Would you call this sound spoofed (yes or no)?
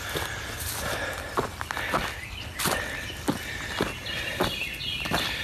no